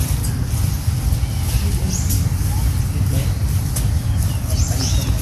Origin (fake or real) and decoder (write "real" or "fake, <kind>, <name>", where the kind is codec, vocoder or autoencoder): real